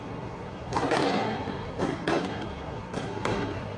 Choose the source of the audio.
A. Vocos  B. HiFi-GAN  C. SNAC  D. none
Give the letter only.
C